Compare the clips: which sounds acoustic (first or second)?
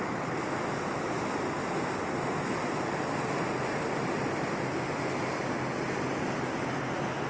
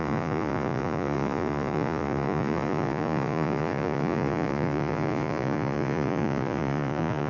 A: first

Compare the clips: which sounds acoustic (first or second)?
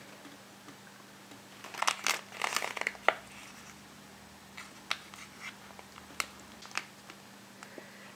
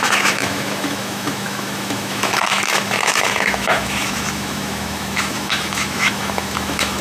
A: first